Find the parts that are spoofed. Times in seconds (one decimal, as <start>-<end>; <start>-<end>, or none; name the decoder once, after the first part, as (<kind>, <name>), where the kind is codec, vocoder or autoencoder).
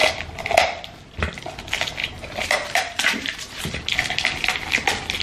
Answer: 2.0-3.8 (vocoder, BigVGAN v2)